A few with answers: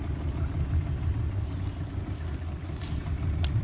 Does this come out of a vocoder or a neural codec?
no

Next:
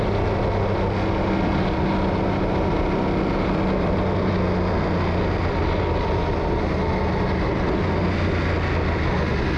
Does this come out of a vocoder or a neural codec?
no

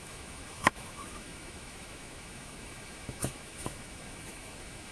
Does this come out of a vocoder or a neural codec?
yes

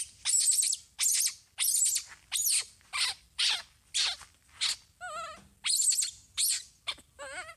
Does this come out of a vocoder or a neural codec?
no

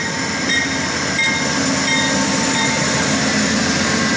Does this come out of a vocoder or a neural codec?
no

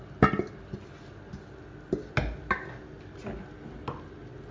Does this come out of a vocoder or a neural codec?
no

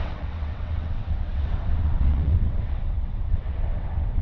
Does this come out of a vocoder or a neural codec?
yes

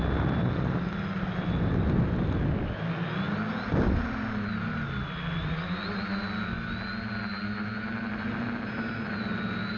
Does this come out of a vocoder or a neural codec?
no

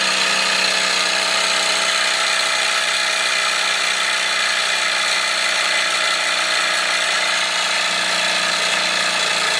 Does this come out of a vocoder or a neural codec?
no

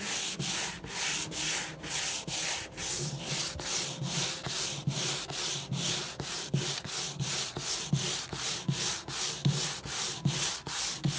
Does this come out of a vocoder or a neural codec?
no